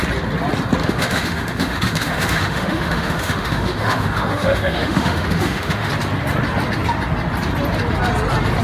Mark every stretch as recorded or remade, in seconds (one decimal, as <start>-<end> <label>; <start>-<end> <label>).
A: 0.0-0.8 recorded; 0.8-5.9 remade; 5.9-8.6 recorded

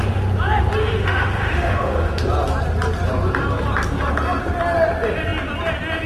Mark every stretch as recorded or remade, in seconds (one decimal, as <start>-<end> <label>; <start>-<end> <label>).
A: 0.0-0.8 recorded; 0.8-2.2 remade; 2.2-6.1 recorded

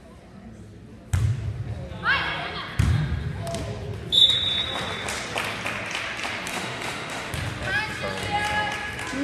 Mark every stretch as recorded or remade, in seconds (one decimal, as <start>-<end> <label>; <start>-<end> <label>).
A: 0.0-6.5 recorded; 6.5-7.3 remade; 7.3-9.2 recorded

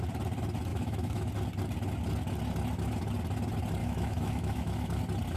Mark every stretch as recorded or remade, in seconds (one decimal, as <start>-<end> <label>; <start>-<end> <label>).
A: 0.0-0.7 recorded; 0.7-1.3 remade; 1.3-3.8 recorded; 3.8-5.0 remade; 5.0-5.4 recorded